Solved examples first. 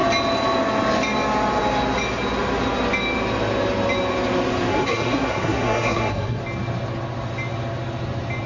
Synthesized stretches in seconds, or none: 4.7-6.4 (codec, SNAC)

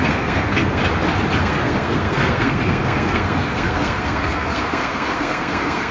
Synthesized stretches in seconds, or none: 0.0-0.8 (codec, SNAC); 1.4-5.9

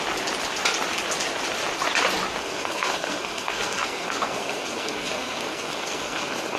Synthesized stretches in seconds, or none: 2.4-6.6 (codec, SNAC)

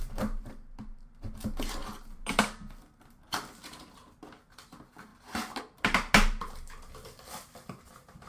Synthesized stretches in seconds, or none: none